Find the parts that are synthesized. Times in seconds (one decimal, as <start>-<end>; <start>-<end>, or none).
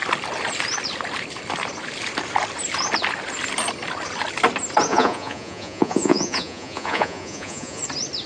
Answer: 4.9-7.8